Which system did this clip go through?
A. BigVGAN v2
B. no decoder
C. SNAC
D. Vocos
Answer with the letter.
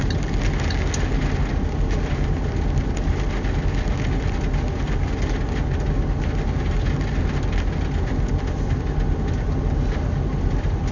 B